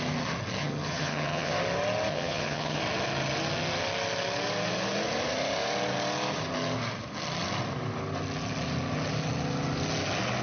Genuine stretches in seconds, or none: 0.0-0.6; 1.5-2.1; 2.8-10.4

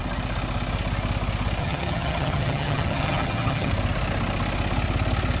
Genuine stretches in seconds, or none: 0.0-1.6; 3.7-5.4

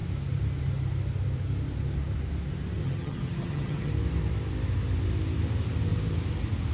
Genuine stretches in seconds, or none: 0.0-2.8; 3.9-6.7

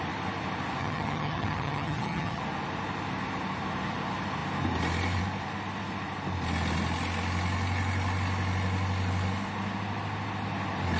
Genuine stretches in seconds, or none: 0.0-0.8; 2.4-11.0

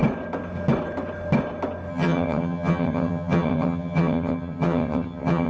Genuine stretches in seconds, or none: 0.0-1.9

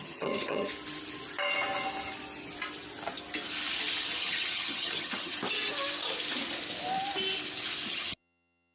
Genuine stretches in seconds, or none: 0.7-4.2; 5.3-7.9

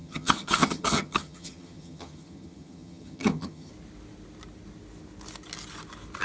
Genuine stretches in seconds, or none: 3.7-6.2